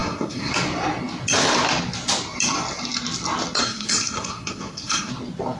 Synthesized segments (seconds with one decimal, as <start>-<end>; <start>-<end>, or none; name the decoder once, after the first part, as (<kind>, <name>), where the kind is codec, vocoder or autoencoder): 0.0-0.5 (codec, SNAC); 3.6-5.1